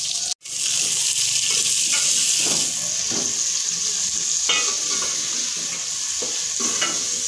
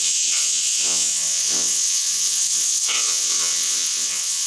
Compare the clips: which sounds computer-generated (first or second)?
second